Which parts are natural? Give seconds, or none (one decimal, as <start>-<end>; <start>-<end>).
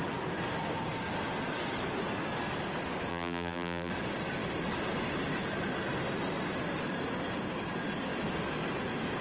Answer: 0.0-3.1; 3.9-9.2